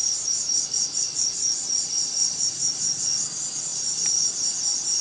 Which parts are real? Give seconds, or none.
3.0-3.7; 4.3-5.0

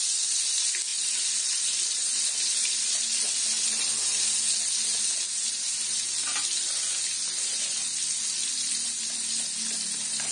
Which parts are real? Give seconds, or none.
0.0-10.3

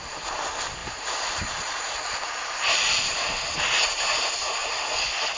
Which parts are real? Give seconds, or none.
0.0-0.8; 3.3-5.4

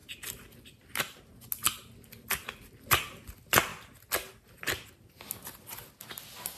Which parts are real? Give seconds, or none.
0.0-6.6